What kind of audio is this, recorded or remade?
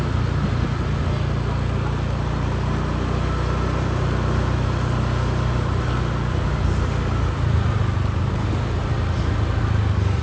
recorded